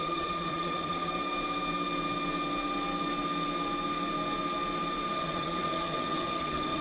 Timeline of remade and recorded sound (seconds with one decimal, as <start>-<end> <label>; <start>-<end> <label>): 0.0-1.1 remade; 1.1-5.2 recorded; 5.2-6.8 remade